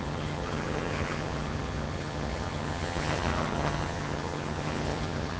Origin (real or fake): fake